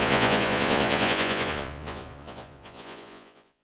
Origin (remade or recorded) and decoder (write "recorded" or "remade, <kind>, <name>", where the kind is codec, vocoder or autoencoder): remade, vocoder, Vocos